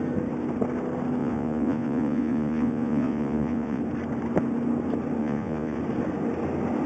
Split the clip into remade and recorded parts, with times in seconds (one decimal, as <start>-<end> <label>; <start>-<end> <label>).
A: 0.0-1.2 recorded; 1.2-3.8 remade; 3.8-5.2 recorded; 5.2-5.8 remade; 5.8-6.9 recorded